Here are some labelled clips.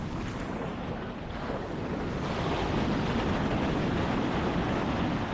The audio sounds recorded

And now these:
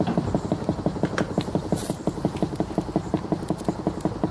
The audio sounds recorded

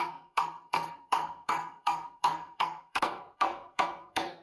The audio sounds remade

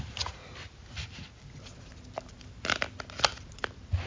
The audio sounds recorded